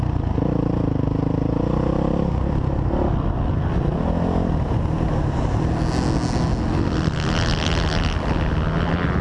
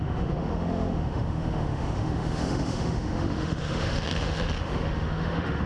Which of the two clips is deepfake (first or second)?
second